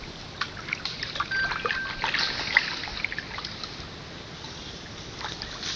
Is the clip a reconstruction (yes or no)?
no